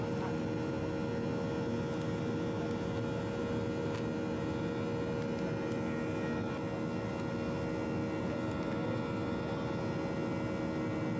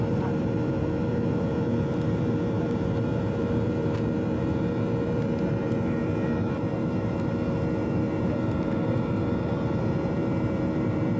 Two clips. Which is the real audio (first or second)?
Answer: first